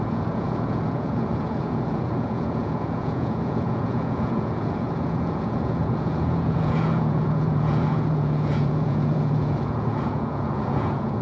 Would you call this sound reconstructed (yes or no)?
yes